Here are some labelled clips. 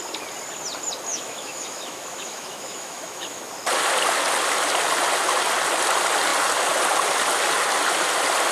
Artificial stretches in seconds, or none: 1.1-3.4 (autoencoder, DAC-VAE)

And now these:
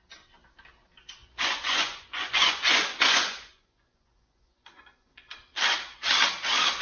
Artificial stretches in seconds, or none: 1.2-5.3 (vocoder, Vocos)